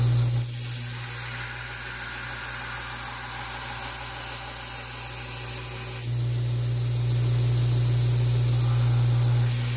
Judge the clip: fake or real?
real